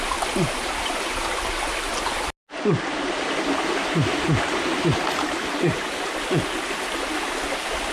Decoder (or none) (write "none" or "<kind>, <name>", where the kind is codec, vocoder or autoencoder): none